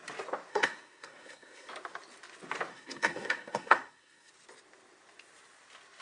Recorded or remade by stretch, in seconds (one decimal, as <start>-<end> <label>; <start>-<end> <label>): 0.0-0.5 recorded; 0.5-1.7 remade; 1.7-2.7 recorded; 2.7-4.3 remade; 4.3-6.0 recorded